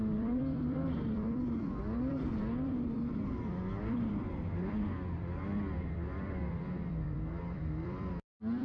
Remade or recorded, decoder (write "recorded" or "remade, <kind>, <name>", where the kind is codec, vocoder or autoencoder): remade, vocoder, BigVGAN v2